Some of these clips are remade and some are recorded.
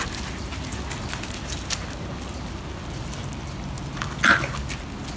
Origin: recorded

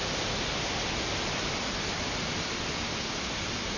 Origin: recorded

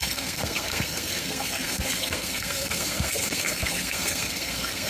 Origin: remade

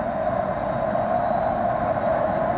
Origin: recorded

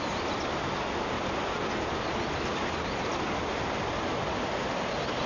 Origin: recorded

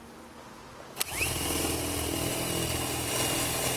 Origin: recorded